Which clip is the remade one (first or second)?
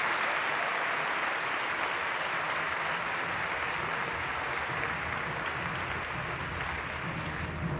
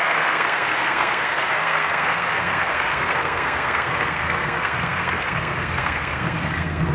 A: second